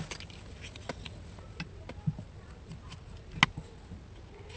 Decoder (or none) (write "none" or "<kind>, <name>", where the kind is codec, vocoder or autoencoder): none